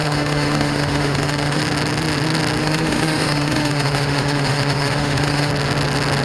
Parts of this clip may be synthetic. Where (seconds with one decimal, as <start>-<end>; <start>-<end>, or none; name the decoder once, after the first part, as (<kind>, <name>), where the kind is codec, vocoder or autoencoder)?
0.0-1.6 (autoencoder, DAC-VAE); 2.6-5.5